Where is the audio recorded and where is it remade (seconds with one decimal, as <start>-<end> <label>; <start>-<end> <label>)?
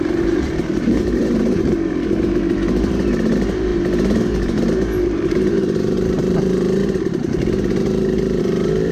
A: 0.0-8.9 remade